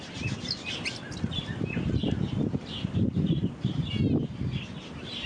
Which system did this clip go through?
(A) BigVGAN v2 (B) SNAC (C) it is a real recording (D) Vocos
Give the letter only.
C